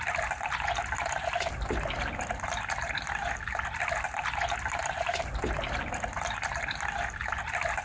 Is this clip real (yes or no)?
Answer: yes